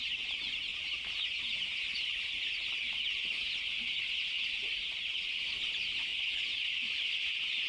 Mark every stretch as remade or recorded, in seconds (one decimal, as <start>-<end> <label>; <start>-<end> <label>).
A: 0.0-0.7 remade; 0.7-5.3 recorded; 5.3-6.1 remade; 6.1-7.7 recorded